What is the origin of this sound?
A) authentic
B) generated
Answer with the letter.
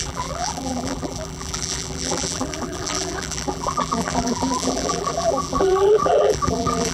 B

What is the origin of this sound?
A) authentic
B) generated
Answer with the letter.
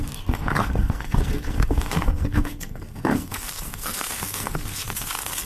B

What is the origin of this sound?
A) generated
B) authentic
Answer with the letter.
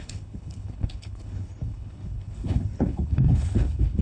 A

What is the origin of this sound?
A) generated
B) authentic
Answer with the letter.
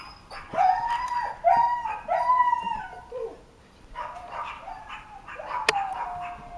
B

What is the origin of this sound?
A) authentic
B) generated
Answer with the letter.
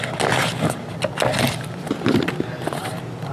A